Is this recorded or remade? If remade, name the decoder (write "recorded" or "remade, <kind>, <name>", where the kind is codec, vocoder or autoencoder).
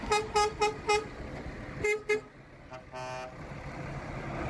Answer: recorded